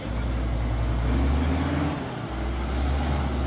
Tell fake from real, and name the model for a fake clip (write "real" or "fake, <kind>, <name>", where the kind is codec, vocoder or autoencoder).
real